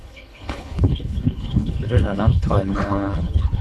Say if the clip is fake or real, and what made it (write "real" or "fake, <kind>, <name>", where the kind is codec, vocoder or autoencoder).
fake, codec, HILCodec